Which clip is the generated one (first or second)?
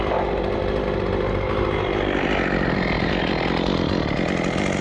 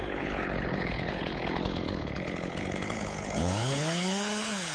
second